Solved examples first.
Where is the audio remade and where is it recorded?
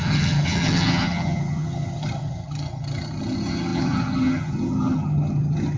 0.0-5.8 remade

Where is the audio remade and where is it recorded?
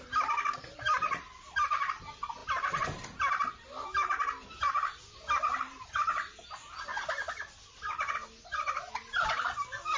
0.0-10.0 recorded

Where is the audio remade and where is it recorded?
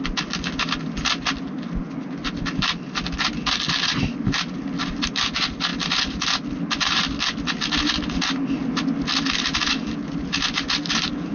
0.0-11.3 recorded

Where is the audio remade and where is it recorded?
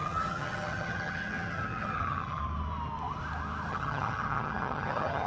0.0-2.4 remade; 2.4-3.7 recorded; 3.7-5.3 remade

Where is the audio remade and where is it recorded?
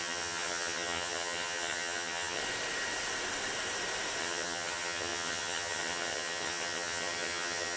0.0-2.4 remade; 2.4-4.2 recorded; 4.2-7.8 remade